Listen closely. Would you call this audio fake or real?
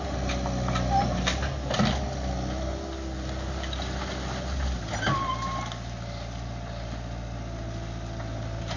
real